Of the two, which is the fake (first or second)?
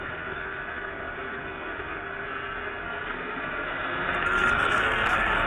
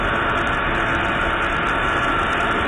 first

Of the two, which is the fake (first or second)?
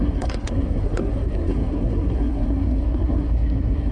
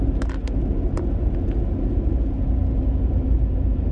first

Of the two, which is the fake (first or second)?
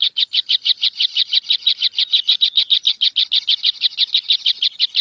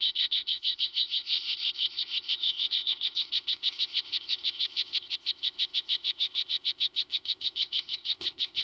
second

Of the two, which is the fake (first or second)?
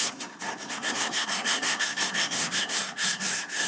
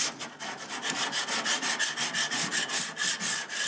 first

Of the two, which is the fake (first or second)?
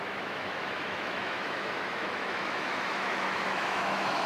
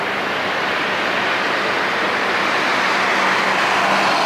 first